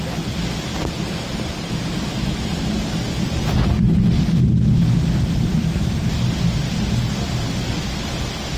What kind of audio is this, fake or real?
real